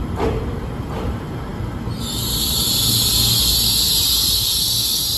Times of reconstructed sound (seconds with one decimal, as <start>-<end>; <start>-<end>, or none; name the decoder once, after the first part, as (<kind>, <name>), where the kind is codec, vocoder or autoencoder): none